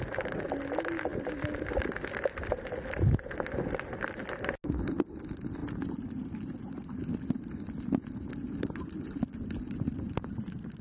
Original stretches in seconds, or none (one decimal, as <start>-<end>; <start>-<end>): 0.0-10.8